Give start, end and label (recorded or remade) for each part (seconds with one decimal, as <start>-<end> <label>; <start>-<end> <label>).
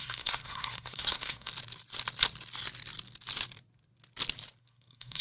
0.0-1.5 remade; 1.5-4.6 recorded; 4.6-5.2 remade